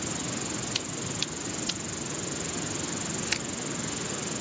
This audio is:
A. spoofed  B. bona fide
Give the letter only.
B